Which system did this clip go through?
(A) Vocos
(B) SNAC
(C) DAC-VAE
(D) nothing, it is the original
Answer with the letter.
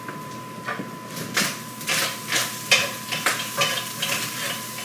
D